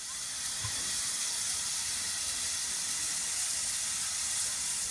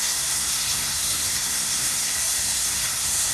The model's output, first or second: second